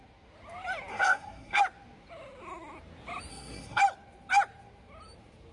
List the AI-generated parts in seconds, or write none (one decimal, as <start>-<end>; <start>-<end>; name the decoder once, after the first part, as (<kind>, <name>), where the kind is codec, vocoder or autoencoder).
0.9-1.6 (codec, SNAC); 3.3-3.8